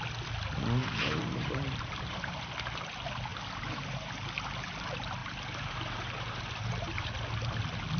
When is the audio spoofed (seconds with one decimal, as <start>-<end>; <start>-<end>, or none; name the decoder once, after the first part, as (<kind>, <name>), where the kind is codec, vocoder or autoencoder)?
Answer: 0.8-2.5 (vocoder, BigVGAN v2); 3.3-4.1; 5.2-7.1